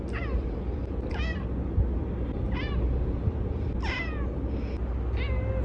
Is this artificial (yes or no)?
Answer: no